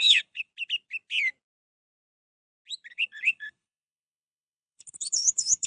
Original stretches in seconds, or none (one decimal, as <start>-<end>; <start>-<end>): 0.5-2.9